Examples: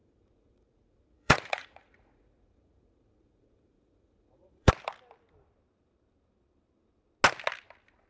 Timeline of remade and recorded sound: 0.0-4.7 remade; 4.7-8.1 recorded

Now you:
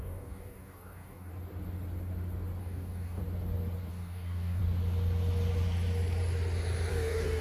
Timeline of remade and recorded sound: 0.0-1.3 remade; 1.3-2.6 recorded; 2.6-3.2 remade; 3.2-3.9 recorded; 3.9-4.6 remade; 4.6-6.9 recorded; 6.9-7.4 remade